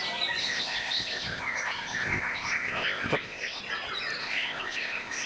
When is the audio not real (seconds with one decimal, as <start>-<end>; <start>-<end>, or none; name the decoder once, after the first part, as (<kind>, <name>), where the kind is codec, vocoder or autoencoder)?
0.4-3.6 (codec, ZipCodec); 4.2-5.3